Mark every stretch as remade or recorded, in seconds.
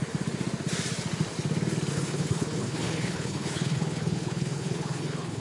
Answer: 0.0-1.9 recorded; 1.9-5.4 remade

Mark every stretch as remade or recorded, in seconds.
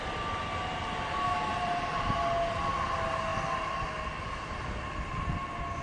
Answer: 0.0-1.5 recorded; 1.5-2.0 remade; 2.0-5.8 recorded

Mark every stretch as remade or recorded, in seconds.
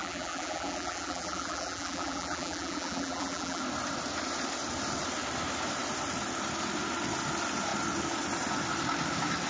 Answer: 0.0-3.6 remade; 3.6-9.5 recorded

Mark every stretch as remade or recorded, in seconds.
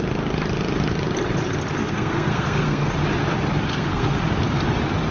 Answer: 0.0-1.8 recorded; 1.8-2.9 remade; 2.9-3.7 recorded; 3.7-4.2 remade; 4.2-5.1 recorded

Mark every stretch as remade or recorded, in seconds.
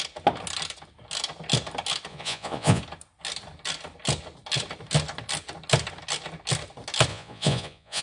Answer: 0.0-2.1 recorded; 2.1-2.8 remade; 2.8-7.1 recorded; 7.1-8.0 remade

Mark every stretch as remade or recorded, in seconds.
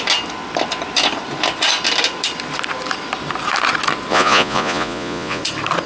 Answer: 0.0-4.1 recorded; 4.1-5.4 remade; 5.4-5.9 recorded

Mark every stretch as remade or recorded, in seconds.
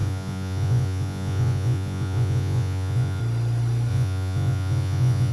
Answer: 0.0-3.2 remade; 3.2-3.9 recorded; 3.9-5.3 remade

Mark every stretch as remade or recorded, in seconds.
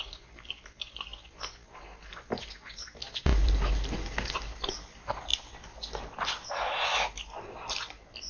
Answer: 0.0-8.3 recorded